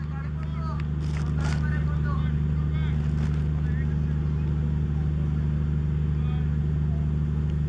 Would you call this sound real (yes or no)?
yes